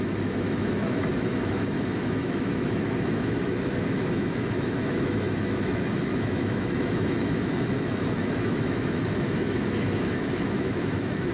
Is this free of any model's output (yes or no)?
no